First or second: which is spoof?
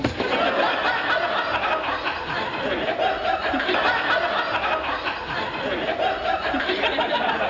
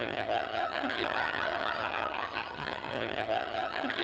second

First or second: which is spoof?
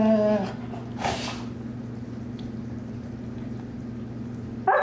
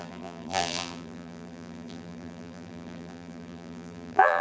second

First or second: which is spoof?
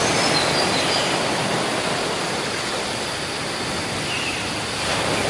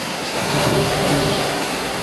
second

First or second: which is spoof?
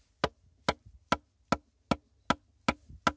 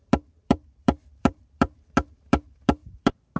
second